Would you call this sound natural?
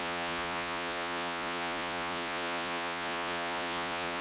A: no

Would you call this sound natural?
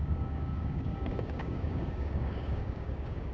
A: no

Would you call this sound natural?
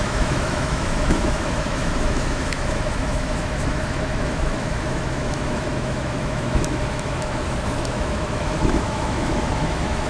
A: no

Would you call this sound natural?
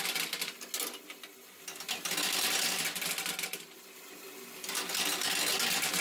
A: yes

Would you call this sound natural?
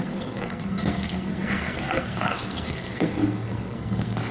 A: no